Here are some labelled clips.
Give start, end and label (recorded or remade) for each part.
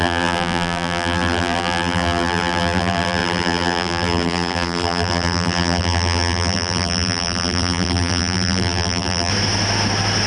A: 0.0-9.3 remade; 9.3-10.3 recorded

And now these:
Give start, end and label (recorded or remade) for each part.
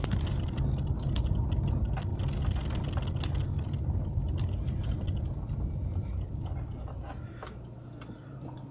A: 0.0-8.7 recorded